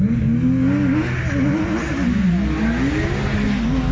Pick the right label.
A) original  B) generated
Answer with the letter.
A